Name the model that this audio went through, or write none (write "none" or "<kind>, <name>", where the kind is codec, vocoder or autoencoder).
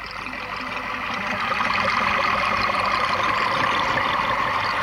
none